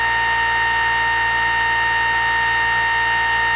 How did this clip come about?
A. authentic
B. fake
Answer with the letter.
A